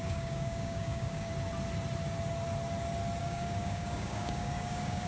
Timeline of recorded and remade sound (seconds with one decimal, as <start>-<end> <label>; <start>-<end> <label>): 0.0-1.3 remade; 1.3-3.2 recorded; 3.2-5.1 remade